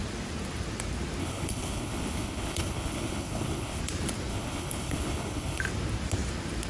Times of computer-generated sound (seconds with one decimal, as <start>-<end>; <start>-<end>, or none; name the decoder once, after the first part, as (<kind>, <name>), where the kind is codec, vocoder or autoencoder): 1.2-3.8 (codec, HILCodec); 4.3-5.6